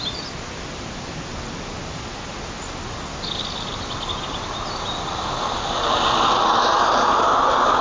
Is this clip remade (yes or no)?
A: no